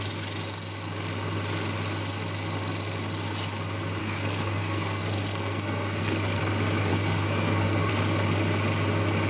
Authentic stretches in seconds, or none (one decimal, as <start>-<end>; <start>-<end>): 0.0-4.0; 6.4-6.9; 7.9-9.3